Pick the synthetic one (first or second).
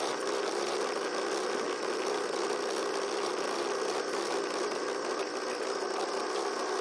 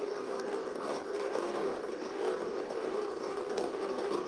second